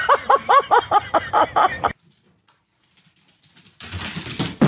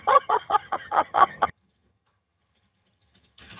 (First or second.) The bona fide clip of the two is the first